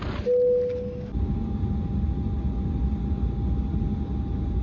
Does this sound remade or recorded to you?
recorded